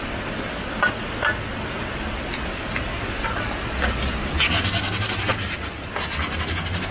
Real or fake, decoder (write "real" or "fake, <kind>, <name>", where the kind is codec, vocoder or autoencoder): real